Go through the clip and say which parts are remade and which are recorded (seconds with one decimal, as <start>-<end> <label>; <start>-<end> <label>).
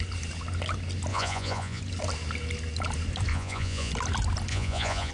0.0-1.1 recorded; 1.1-1.8 remade; 1.8-3.3 recorded; 3.3-3.9 remade; 3.9-4.5 recorded; 4.5-5.1 remade